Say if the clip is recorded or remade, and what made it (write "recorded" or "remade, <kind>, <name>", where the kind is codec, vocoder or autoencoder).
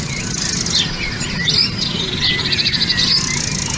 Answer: recorded